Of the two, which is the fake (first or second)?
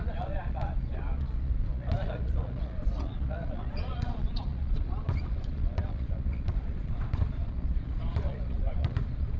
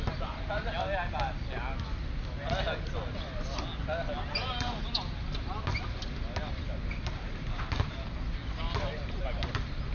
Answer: first